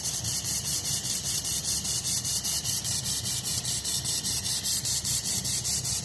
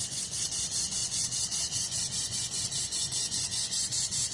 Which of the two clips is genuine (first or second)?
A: first